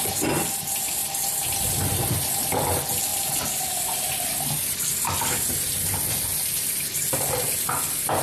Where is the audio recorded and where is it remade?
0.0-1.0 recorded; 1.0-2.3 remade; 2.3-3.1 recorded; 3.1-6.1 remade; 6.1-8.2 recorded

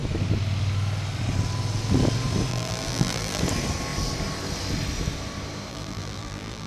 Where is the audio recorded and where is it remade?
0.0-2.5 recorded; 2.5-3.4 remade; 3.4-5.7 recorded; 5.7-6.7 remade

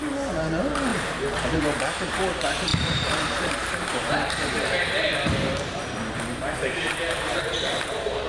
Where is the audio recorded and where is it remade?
0.0-0.9 recorded; 0.9-1.6 remade; 1.6-2.7 recorded; 2.7-7.4 remade; 7.4-8.3 recorded